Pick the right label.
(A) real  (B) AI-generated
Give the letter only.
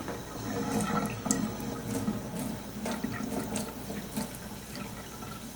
A